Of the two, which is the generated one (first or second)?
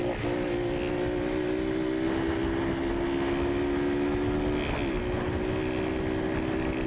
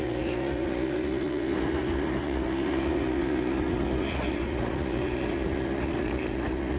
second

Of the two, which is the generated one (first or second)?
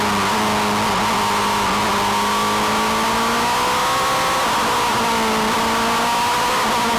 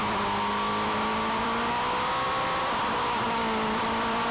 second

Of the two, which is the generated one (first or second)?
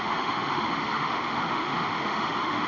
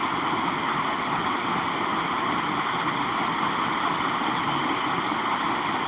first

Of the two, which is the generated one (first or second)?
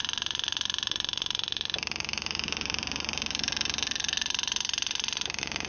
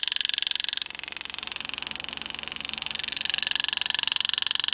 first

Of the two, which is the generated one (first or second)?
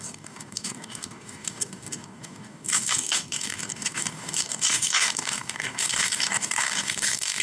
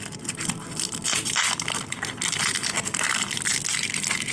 first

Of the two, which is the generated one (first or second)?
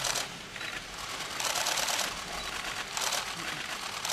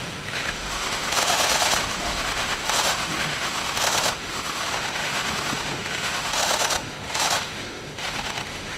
second